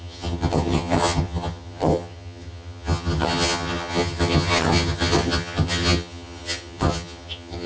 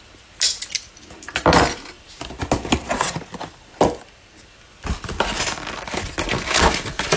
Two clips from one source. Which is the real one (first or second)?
second